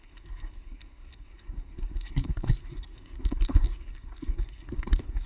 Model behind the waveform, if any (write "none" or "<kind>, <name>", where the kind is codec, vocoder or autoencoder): codec, SNAC